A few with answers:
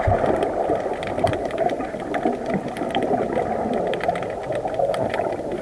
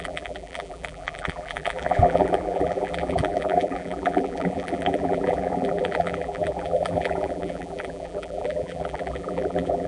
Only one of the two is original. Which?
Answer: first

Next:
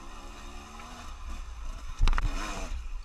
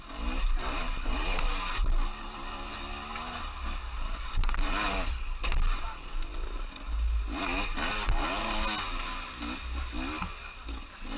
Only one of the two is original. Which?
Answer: second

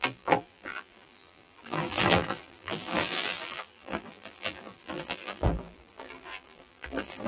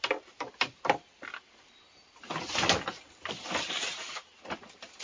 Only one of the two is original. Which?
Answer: second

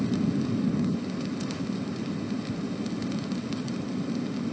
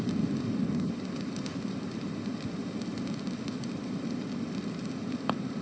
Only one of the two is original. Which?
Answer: first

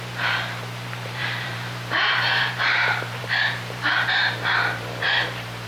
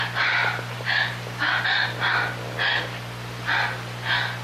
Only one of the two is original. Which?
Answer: second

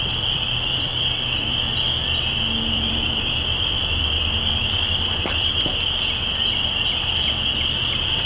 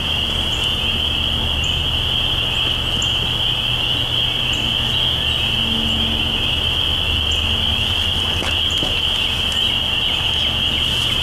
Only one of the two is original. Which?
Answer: second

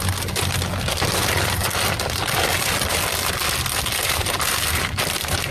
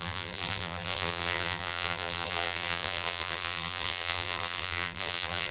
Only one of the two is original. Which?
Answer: first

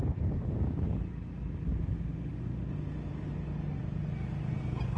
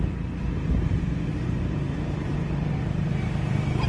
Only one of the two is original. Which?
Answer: first